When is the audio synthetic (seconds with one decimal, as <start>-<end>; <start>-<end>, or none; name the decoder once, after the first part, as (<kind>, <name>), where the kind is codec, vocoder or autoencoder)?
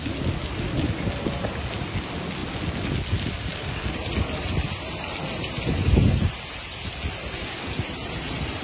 none